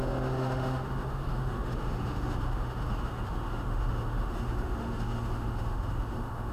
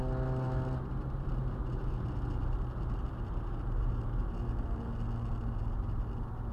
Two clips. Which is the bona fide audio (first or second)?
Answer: second